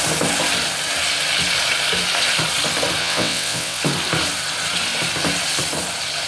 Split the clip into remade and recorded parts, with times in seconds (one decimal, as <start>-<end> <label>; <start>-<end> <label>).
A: 0.0-3.0 recorded; 3.0-3.8 remade; 3.8-6.3 recorded